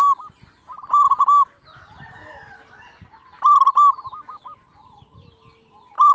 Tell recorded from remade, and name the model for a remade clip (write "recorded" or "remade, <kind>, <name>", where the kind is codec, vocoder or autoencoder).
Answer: recorded